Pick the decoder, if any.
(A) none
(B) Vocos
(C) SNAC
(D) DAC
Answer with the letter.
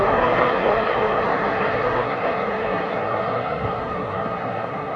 C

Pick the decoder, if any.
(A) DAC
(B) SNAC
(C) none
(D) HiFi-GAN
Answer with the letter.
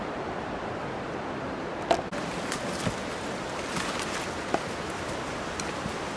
C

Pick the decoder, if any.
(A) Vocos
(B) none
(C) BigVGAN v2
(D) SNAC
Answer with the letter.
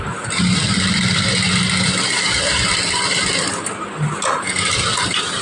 B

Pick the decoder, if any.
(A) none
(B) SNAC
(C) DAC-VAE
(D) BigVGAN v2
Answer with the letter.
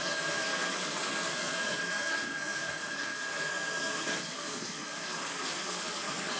B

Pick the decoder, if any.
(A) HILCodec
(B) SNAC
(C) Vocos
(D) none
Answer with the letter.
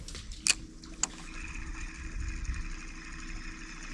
D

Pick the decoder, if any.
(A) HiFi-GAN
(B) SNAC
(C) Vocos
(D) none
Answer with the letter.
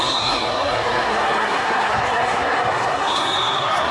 B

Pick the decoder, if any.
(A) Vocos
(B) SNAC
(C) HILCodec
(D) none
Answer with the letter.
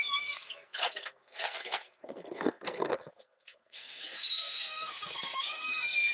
B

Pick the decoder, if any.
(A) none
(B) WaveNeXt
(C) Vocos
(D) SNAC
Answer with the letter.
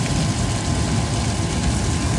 A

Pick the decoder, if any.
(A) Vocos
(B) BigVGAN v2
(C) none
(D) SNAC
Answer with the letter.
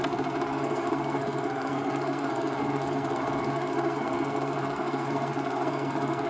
D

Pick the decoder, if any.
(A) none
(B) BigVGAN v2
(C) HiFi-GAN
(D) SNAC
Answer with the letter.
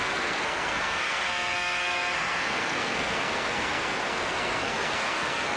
D